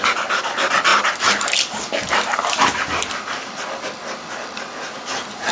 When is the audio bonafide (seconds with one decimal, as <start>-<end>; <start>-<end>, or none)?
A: 0.0-0.9; 4.2-5.5